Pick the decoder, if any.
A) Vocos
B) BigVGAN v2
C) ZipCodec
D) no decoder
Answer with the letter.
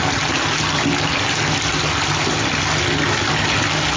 D